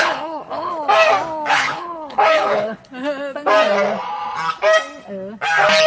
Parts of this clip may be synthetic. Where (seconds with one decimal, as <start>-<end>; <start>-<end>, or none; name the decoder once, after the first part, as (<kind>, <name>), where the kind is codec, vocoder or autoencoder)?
0.0-0.7 (codec, HILCodec); 1.5-2.8